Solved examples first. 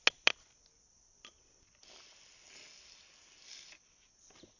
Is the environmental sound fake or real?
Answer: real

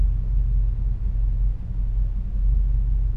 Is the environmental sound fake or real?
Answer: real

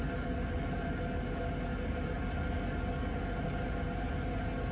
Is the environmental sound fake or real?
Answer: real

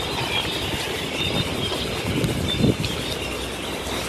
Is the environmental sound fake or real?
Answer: real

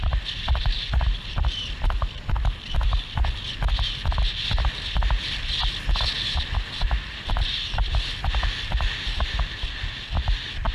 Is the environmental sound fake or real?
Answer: real